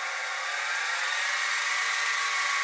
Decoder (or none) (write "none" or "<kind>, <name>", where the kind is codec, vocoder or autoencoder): none